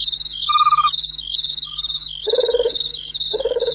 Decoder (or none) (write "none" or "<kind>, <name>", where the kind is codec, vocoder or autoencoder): codec, DAC